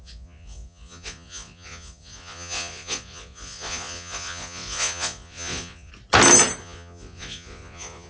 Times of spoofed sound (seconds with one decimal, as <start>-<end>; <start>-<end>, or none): 0.0-5.9; 6.6-8.1